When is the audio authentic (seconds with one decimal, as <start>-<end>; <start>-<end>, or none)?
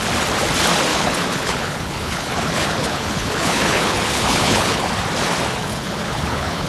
0.0-0.9; 4.9-5.6